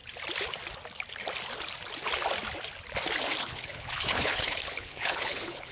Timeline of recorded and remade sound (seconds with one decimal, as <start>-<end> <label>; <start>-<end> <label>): 0.0-3.4 recorded; 3.4-5.7 remade